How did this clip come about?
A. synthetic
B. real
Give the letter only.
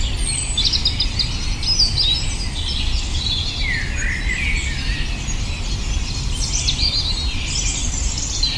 B